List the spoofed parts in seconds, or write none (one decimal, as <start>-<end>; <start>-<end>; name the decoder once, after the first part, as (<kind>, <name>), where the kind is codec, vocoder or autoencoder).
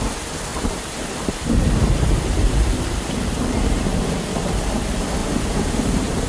0.5-4.2 (vocoder, BigVGAN v2); 5.2-6.3